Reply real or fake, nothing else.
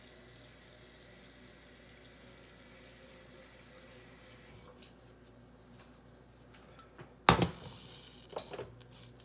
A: real